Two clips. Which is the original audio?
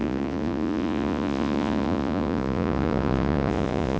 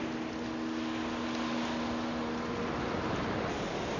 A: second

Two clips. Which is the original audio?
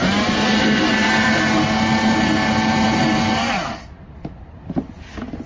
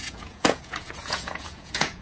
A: first